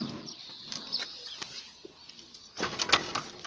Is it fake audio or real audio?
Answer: real